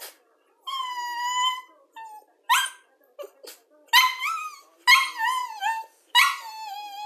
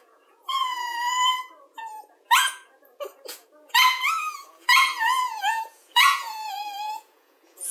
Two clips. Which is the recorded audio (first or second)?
first